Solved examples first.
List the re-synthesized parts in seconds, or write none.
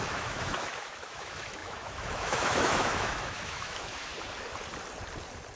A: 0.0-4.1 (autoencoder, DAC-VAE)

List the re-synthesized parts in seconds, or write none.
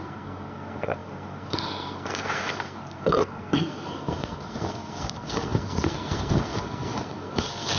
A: 0.0-7.8 (codec, SNAC)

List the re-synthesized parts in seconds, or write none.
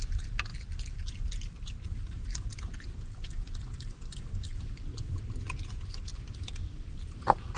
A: none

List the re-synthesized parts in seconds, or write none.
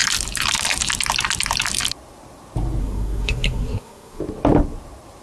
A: 2.8-4.2 (codec, SNAC)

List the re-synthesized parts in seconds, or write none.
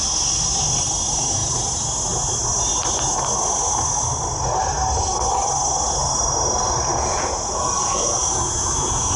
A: 6.9-9.2 (vocoder, Vocos)